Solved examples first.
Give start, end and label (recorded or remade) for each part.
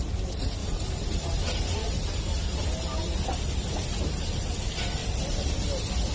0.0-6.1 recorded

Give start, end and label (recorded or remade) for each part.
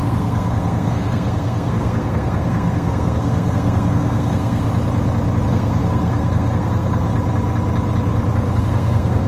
0.0-4.7 remade; 4.7-5.5 recorded; 5.5-7.1 remade; 7.1-8.6 recorded; 8.6-9.3 remade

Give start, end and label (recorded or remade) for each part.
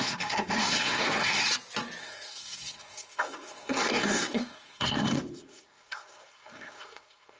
0.0-1.4 remade; 1.4-2.0 recorded; 2.0-7.4 remade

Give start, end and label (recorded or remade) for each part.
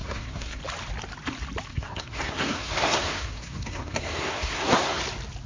0.0-0.6 remade; 0.6-1.7 recorded; 1.7-5.0 remade; 5.0-5.5 recorded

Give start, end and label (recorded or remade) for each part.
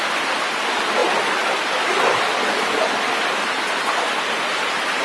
0.0-5.0 recorded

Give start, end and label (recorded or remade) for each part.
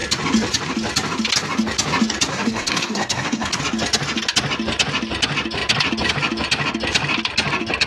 0.0-2.3 recorded; 2.3-3.6 remade; 3.6-7.9 recorded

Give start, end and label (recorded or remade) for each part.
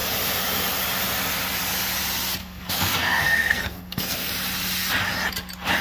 0.0-2.4 recorded; 2.4-4.3 remade; 4.3-5.8 recorded